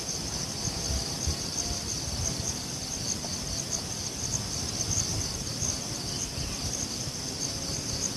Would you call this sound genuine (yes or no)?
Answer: yes